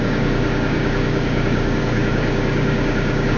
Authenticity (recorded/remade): remade